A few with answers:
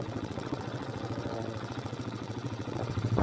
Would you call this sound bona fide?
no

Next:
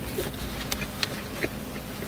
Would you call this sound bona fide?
yes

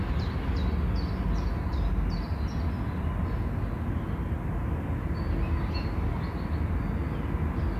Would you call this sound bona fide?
yes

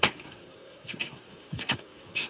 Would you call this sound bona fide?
no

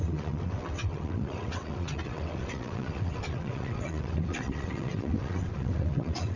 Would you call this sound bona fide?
no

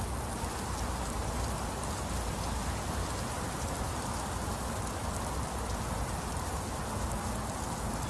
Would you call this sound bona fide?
yes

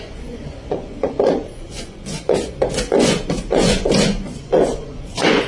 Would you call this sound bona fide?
no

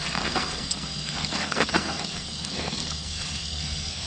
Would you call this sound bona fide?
no